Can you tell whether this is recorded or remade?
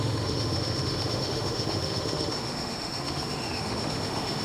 remade